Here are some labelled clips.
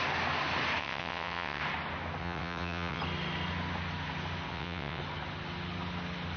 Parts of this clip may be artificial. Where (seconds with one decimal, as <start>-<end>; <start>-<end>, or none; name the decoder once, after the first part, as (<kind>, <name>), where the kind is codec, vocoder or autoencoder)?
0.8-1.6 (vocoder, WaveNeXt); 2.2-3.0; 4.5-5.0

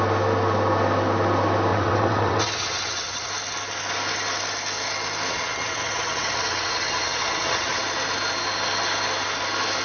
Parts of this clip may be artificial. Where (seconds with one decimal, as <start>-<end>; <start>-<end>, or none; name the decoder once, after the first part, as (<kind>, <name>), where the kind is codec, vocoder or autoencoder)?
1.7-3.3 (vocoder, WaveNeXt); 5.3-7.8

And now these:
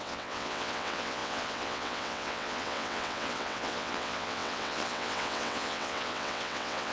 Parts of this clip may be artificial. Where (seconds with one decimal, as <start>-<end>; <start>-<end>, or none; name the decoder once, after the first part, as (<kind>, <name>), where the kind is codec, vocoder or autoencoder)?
0.0-6.9 (vocoder, WaveNeXt)

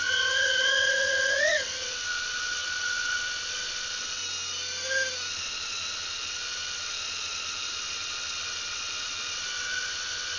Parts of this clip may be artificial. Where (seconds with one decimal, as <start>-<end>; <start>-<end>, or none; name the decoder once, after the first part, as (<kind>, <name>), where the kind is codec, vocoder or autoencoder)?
0.0-4.2 (vocoder, WaveNeXt); 5.3-10.4

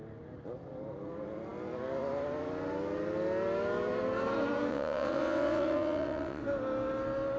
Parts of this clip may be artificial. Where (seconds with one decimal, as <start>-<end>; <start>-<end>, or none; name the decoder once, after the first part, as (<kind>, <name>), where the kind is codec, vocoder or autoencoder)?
4.7-6.4 (vocoder, WaveNeXt)

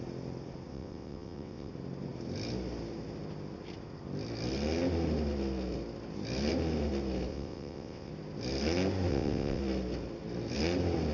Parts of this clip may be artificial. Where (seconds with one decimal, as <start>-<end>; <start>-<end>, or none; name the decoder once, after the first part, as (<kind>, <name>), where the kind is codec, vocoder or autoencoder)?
0.7-1.7 (vocoder, WaveNeXt); 7.3-8.1; 9.1-9.6